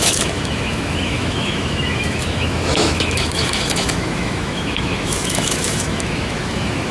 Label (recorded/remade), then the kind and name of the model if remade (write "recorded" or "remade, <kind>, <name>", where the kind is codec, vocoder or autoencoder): remade, autoencoder, DAC-VAE